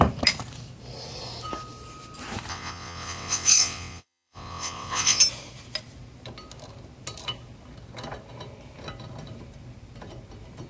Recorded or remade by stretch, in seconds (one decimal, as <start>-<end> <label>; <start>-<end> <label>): 0.0-2.5 recorded; 2.5-5.2 remade; 5.2-10.7 recorded